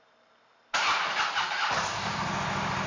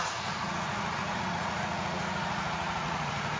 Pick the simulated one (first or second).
second